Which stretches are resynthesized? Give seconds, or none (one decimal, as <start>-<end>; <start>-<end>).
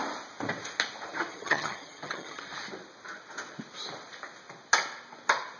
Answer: 1.3-2.4